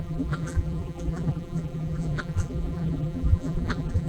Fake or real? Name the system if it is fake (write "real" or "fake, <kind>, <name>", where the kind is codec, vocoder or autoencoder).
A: fake, vocoder, BigVGAN v2